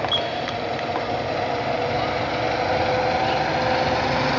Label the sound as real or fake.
real